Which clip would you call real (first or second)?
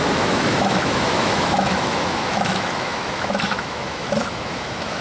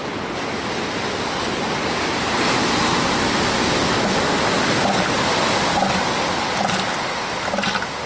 second